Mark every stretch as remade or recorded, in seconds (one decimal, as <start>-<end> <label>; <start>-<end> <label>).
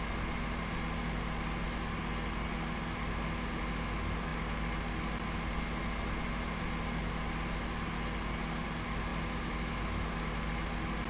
0.0-11.1 recorded